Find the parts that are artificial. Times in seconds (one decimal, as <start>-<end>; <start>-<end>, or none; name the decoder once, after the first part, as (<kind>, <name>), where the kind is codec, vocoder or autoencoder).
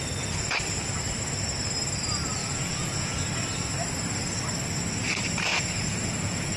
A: 2.4-3.2 (vocoder, Vocos); 5.5-6.6